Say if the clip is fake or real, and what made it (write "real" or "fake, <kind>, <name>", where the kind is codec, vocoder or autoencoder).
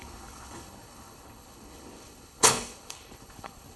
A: fake, codec, HILCodec